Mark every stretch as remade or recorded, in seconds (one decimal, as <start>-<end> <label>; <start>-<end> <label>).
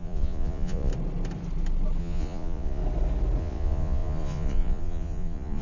0.0-0.9 remade; 0.9-2.0 recorded; 2.0-2.8 remade; 2.8-3.4 recorded; 3.4-5.6 remade